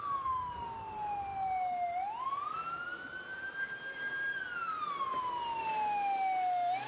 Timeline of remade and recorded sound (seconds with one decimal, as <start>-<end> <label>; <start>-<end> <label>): 0.0-6.9 recorded